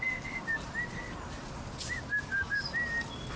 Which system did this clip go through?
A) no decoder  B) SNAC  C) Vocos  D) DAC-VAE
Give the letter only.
A